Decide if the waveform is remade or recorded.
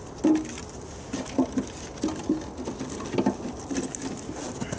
recorded